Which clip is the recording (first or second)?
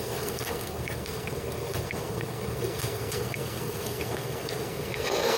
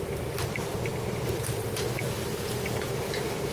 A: second